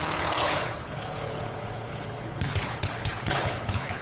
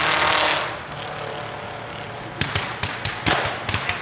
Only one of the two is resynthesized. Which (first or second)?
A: first